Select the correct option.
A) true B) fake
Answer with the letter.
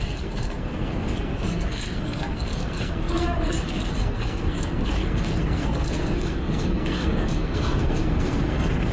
B